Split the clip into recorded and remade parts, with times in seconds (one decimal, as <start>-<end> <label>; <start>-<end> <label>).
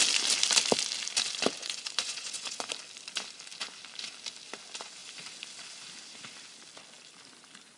0.0-1.6 recorded; 1.6-2.7 remade; 2.7-7.8 recorded